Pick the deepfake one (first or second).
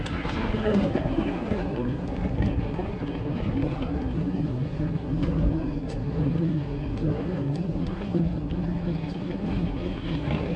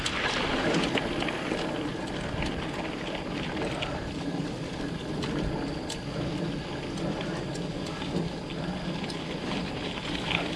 first